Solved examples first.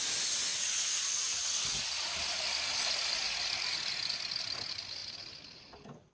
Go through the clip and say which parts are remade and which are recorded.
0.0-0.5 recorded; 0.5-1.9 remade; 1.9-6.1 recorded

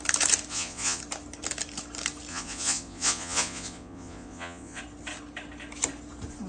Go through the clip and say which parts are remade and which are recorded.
0.0-0.5 recorded; 0.5-1.0 remade; 1.0-2.3 recorded; 2.3-4.8 remade; 4.8-6.5 recorded

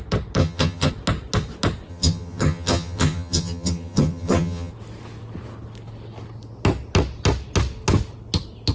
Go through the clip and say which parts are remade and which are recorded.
0.0-0.4 recorded; 0.4-0.9 remade; 0.9-1.9 recorded; 1.9-4.7 remade; 4.7-8.7 recorded

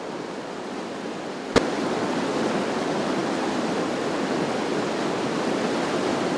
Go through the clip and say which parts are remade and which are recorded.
0.0-1.5 recorded; 1.5-2.8 remade; 2.8-3.2 recorded; 3.2-3.9 remade; 3.9-4.7 recorded; 4.7-5.6 remade; 5.6-6.4 recorded

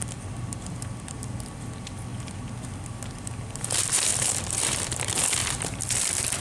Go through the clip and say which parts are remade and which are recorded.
0.0-4.1 recorded; 4.1-4.9 remade; 4.9-5.4 recorded; 5.4-6.4 remade

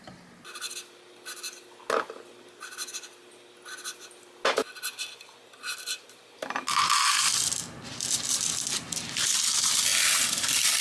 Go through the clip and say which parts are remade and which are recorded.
0.0-10.8 recorded

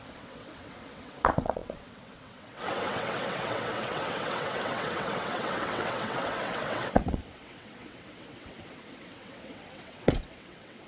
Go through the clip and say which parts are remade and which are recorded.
0.0-10.9 remade

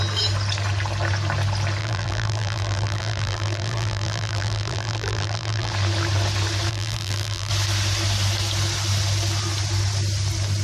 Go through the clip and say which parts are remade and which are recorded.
0.0-1.8 recorded; 1.8-5.7 remade; 5.7-6.7 recorded; 6.7-7.5 remade; 7.5-10.6 recorded